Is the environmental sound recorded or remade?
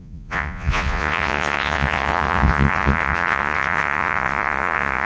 remade